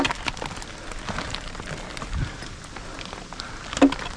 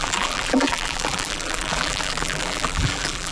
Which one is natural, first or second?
first